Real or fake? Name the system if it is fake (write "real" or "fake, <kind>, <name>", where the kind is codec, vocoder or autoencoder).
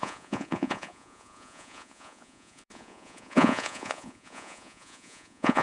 fake, vocoder, Vocos